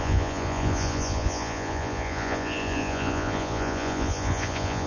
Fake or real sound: fake